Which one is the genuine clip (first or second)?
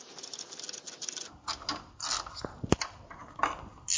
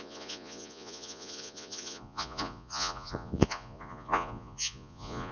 first